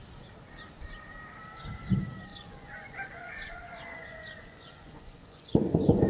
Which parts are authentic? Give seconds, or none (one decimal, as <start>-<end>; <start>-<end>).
0.0-2.3